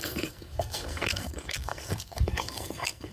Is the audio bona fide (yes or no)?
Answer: no